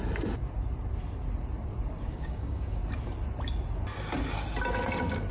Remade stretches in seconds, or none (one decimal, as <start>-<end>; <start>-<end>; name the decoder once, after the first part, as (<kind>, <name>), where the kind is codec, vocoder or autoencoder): 2.1-2.8 (codec, DAC)